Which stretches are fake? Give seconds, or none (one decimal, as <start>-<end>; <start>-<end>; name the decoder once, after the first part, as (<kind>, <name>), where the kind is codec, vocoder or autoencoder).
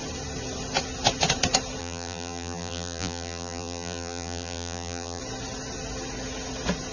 1.8-5.2 (vocoder, BigVGAN v2)